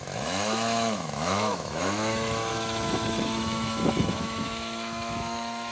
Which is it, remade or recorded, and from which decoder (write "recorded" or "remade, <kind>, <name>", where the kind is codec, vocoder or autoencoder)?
remade, autoencoder, DAC-VAE